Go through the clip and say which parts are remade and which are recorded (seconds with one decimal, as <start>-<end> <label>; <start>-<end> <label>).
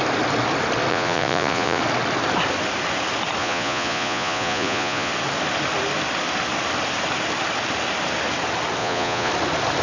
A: 0.0-0.9 recorded; 0.9-1.8 remade; 1.8-3.4 recorded; 3.4-5.1 remade; 5.1-8.8 recorded; 8.8-9.3 remade; 9.3-9.8 recorded